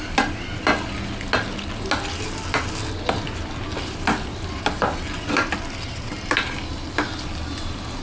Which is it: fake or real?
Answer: real